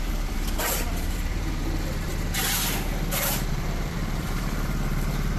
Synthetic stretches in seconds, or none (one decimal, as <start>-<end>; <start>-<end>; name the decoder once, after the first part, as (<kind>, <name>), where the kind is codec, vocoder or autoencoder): 0.0-2.1 (vocoder, BigVGAN v2); 3.5-5.4